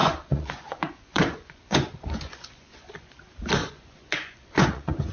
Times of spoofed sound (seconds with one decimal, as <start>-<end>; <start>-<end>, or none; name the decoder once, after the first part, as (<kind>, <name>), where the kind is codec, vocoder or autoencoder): 0.0-3.1 (vocoder, Vocos); 3.6-5.1